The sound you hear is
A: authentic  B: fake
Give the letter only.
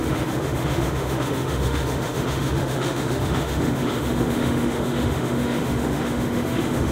B